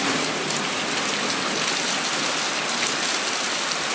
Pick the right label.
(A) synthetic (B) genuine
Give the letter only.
B